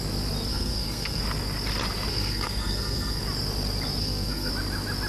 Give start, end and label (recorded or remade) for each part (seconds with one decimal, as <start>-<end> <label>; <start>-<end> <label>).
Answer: 0.0-0.5 recorded; 0.5-1.2 remade; 1.2-2.1 recorded; 2.1-3.2 remade; 3.2-4.0 recorded; 4.0-4.5 remade; 4.5-5.1 recorded